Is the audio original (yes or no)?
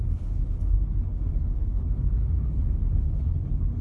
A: no